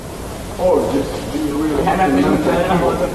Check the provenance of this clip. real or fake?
fake